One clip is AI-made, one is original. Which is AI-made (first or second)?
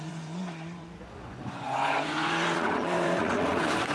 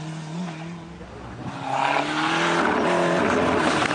first